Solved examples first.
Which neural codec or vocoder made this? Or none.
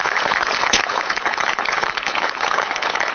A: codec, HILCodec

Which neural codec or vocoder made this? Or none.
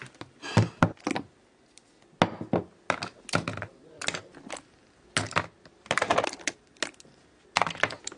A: none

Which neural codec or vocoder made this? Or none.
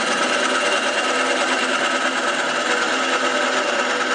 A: none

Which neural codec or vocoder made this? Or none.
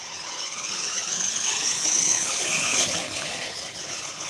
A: codec, HILCodec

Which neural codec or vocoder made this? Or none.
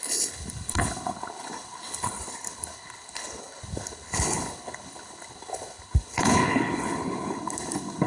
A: codec, HILCodec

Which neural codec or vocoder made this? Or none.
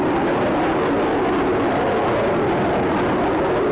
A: none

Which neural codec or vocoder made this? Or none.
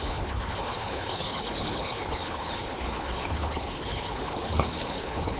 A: codec, HILCodec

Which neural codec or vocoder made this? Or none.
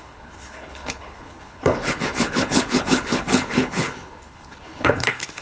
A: codec, HILCodec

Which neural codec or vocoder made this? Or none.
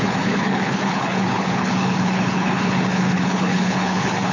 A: codec, HILCodec